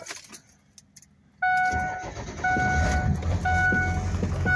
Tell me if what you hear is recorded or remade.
recorded